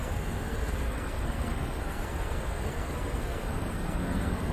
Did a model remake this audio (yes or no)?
yes